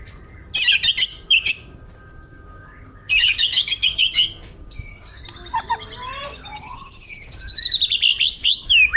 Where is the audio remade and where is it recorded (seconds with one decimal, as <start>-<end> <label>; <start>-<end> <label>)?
0.0-1.1 recorded; 1.1-5.2 remade; 5.2-6.6 recorded; 6.6-7.6 remade; 7.6-8.4 recorded; 8.4-9.0 remade